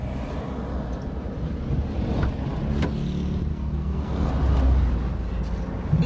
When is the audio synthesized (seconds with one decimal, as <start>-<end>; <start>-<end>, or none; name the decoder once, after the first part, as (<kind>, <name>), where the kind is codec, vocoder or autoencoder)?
3.5-4.3 (codec, SNAC)